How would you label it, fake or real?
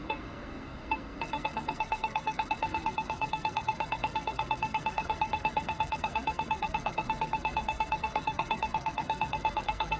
fake